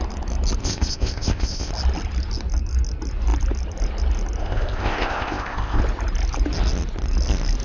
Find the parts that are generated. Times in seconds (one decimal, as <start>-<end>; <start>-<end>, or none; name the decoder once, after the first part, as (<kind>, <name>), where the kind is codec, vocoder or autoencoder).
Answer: 0.6-1.7 (codec, ZipCodec); 4.4-5.8